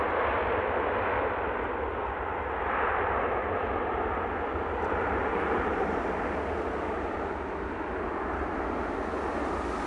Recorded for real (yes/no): yes